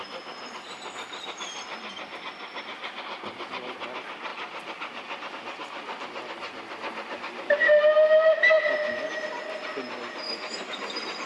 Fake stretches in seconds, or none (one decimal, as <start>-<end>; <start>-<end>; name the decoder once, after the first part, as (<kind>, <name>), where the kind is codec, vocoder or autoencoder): none